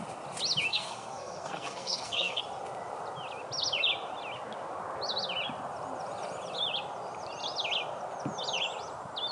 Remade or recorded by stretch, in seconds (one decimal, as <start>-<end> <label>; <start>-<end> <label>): 0.0-0.7 recorded; 0.7-2.4 remade; 2.4-9.3 recorded